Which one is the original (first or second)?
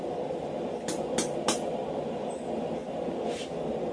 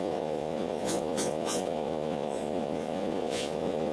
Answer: first